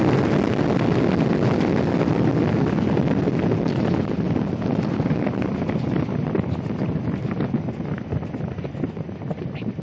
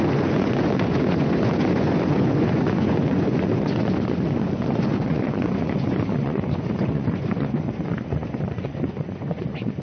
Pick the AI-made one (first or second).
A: second